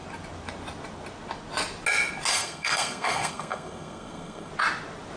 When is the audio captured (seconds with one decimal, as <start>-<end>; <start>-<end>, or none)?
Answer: 0.0-2.3; 4.5-5.2